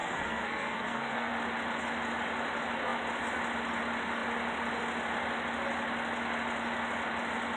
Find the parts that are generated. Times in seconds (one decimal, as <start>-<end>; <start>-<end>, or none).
0.0-1.3